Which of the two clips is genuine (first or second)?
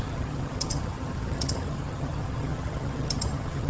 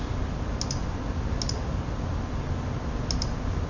second